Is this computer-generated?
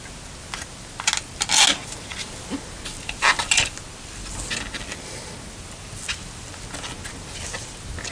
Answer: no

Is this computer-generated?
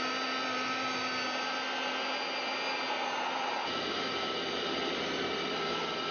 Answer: no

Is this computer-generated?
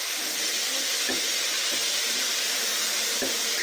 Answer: no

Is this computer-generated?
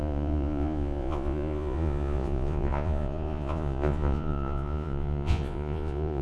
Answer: yes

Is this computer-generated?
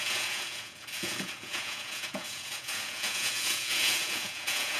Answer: yes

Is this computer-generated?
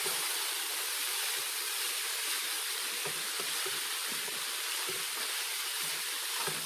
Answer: no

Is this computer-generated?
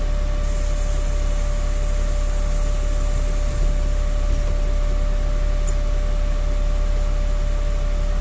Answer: no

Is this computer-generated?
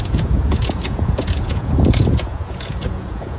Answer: yes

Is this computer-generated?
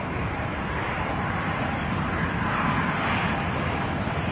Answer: no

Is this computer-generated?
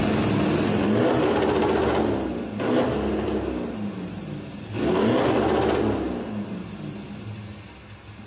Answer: no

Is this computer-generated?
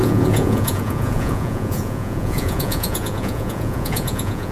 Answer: yes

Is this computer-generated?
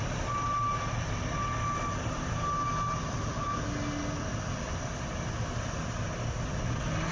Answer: no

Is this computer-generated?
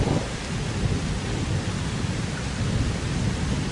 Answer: no